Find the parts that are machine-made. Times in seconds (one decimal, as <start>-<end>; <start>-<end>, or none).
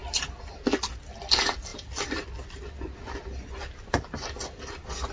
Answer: none